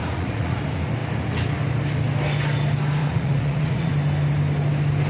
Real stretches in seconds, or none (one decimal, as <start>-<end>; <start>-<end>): 0.6-3.0; 3.9-5.1